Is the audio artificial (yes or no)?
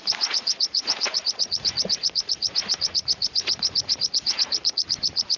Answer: yes